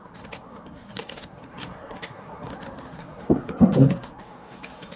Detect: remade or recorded remade